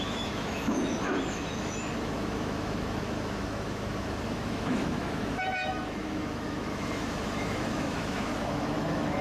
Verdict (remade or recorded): remade